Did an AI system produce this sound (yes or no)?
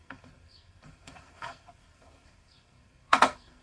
yes